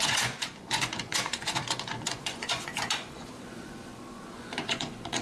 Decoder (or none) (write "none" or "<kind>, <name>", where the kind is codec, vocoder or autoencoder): vocoder, Vocos